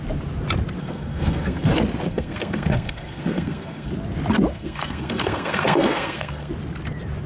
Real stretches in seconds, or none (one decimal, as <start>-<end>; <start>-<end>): 0.0-0.8; 1.7-2.1; 3.9-4.5; 6.5-7.3